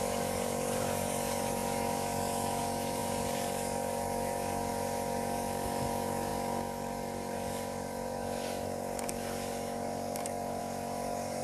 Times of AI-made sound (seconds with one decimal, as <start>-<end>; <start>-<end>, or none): 0.0-11.4